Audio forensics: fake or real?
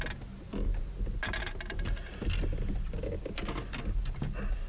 real